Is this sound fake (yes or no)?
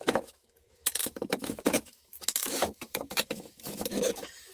yes